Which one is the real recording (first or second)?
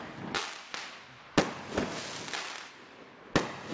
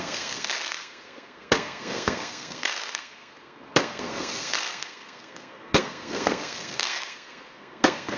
first